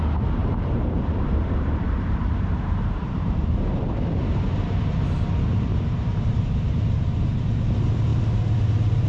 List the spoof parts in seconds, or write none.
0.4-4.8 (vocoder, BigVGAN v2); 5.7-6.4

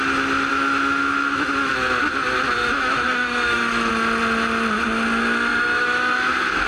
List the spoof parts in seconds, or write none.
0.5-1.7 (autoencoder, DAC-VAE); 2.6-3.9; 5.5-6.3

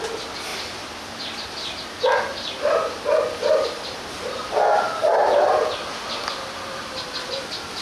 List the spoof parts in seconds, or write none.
none